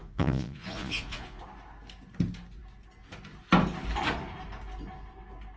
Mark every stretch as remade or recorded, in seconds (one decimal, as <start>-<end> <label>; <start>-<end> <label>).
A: 0.0-1.4 remade; 1.4-5.6 recorded